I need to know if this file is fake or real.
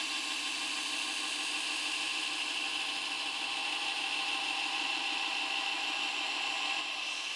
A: real